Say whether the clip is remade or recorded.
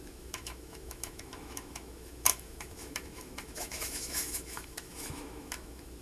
remade